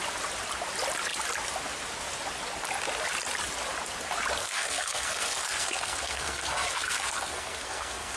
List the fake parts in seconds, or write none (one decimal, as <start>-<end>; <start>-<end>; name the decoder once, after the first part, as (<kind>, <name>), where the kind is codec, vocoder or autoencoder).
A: 4.4-8.2 (codec, SNAC)